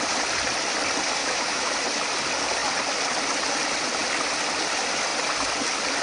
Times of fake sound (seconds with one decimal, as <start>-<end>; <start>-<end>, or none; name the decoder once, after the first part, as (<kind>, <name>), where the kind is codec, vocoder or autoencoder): 1.2-1.7 (autoencoder, DAC-VAE)